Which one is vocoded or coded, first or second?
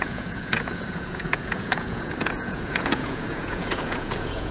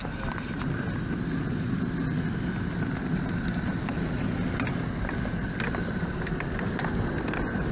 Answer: first